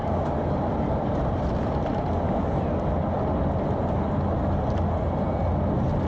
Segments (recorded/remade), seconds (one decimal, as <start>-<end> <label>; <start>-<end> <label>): 0.0-6.1 recorded